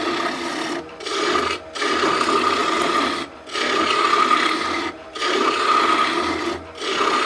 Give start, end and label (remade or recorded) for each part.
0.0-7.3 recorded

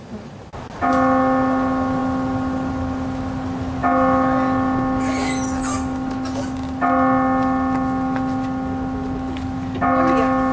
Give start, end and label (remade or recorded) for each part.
0.0-10.5 recorded

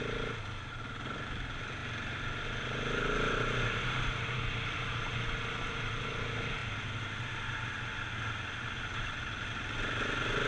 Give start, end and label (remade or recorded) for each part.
0.0-10.5 recorded

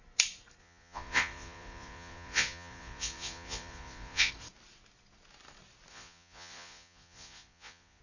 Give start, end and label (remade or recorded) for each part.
0.0-0.6 recorded; 0.6-4.3 remade; 4.3-5.9 recorded; 5.9-8.0 remade

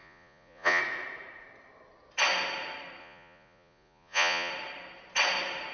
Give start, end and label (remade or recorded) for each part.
0.0-0.8 remade; 0.8-3.0 recorded; 3.0-4.5 remade; 4.5-5.7 recorded

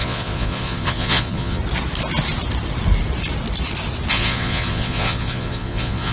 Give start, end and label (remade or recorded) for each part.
0.0-1.6 remade; 1.6-4.1 recorded; 4.1-6.1 remade

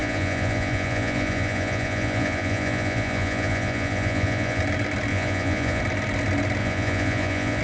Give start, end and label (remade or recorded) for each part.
0.0-4.6 remade; 4.6-5.1 recorded; 5.1-5.8 remade; 5.8-6.6 recorded; 6.6-7.6 remade